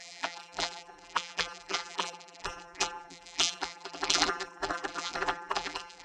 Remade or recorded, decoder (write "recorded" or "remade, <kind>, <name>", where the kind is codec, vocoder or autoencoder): remade, vocoder, BigVGAN v2